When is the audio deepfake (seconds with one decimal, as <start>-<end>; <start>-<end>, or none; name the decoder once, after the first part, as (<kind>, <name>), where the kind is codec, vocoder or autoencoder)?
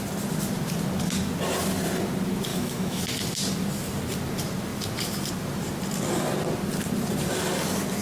2.5-3.0 (autoencoder, DAC-VAE)